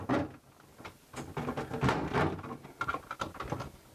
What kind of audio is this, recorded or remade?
recorded